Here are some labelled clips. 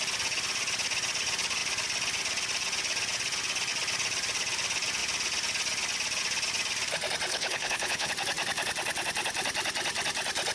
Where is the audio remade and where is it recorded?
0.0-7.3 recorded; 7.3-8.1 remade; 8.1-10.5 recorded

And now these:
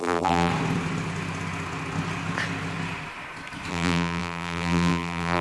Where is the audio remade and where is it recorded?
0.0-0.5 remade; 0.5-3.7 recorded; 3.7-5.4 remade

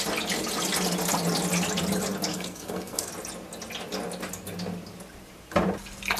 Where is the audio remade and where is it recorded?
0.0-2.3 recorded; 2.3-3.1 remade; 3.1-6.2 recorded

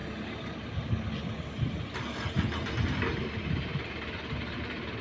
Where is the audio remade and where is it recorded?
0.0-5.0 recorded

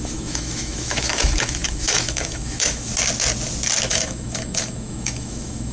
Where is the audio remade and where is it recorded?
0.0-2.9 remade; 2.9-3.9 recorded; 3.9-5.7 remade